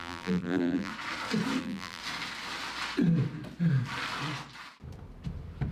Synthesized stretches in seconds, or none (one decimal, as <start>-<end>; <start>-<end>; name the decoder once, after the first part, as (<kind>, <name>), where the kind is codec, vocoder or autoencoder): 0.0-0.9 (vocoder, BigVGAN v2); 1.6-2.0